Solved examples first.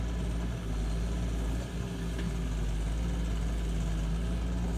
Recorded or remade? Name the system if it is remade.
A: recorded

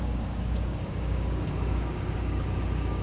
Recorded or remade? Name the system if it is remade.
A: remade, codec, DAC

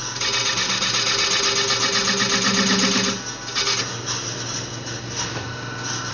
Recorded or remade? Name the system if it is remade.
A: recorded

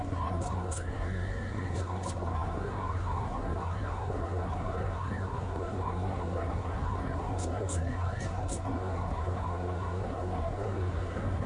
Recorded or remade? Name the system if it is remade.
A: remade, codec, SNAC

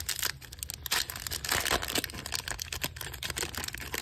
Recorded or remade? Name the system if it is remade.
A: recorded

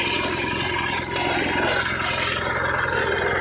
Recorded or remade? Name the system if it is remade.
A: recorded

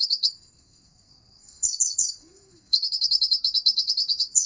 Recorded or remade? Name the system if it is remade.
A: remade, codec, SNAC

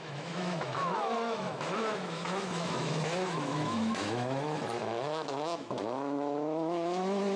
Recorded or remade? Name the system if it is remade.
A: remade, autoencoder, DAC-VAE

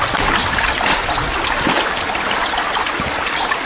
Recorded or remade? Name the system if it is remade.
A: recorded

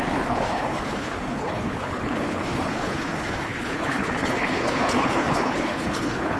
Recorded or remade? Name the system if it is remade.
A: remade, codec, HILCodec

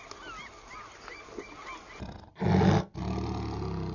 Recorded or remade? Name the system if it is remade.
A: recorded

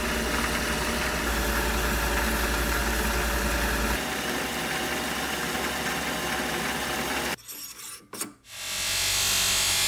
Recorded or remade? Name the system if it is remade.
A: recorded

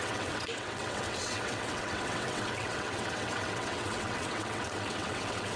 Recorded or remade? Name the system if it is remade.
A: remade, vocoder, WaveNeXt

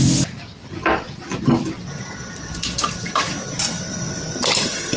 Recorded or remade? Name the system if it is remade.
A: remade, vocoder, BigVGAN v2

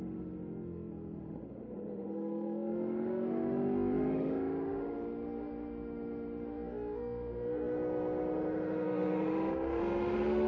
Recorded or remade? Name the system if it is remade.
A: remade, autoencoder, DAC-VAE